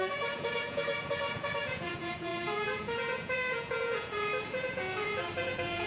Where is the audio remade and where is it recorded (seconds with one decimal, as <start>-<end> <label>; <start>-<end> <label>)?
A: 0.0-5.9 remade